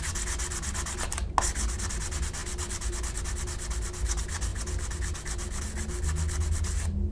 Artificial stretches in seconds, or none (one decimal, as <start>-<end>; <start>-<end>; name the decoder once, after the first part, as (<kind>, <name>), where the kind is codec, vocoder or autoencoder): none